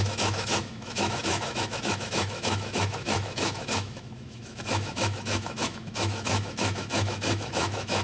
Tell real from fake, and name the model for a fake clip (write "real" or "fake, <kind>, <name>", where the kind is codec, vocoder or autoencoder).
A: fake, autoencoder, DAC-VAE